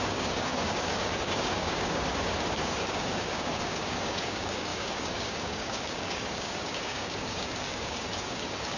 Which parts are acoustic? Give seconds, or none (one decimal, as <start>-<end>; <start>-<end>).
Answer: none